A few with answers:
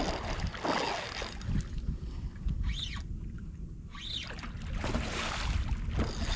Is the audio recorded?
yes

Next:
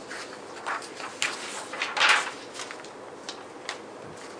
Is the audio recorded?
yes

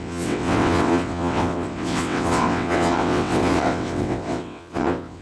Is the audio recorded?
no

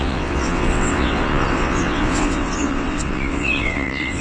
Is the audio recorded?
no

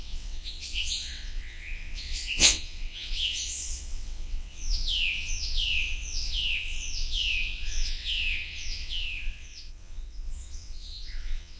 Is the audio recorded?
no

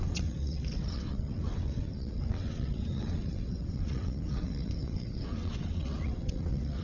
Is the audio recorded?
no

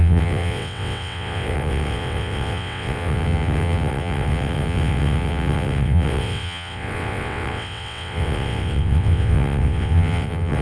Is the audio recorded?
no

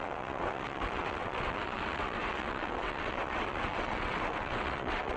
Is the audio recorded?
no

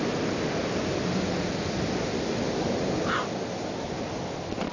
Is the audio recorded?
yes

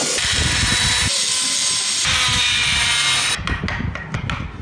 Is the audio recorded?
yes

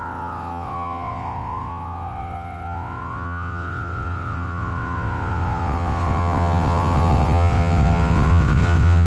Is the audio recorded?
no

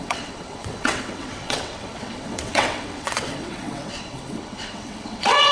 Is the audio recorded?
no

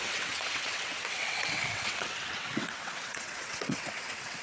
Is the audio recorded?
no